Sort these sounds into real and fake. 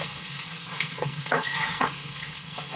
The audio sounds fake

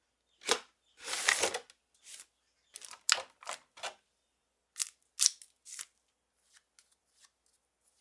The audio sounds real